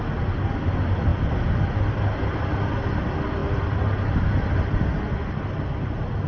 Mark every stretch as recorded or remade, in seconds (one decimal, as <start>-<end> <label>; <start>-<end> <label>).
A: 0.0-6.3 recorded